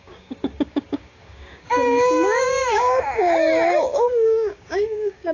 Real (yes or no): no